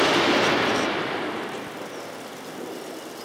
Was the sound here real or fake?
real